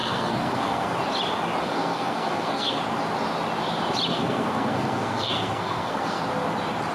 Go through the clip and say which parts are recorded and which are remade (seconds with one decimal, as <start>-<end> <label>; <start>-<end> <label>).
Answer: 0.0-0.9 remade; 0.9-1.6 recorded; 1.6-2.8 remade; 2.8-4.1 recorded; 4.1-6.2 remade; 6.2-6.9 recorded